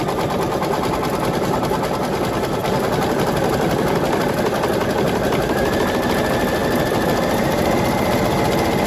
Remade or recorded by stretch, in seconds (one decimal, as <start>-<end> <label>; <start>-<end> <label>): 0.0-4.7 recorded; 4.7-5.7 remade; 5.7-6.6 recorded; 6.6-7.2 remade; 7.2-8.9 recorded